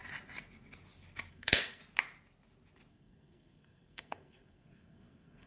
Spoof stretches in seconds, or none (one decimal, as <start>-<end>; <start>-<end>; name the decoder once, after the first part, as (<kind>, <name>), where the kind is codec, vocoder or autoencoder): 1.3-1.8 (codec, SNAC); 2.9-5.5